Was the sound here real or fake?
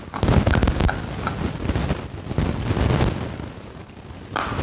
real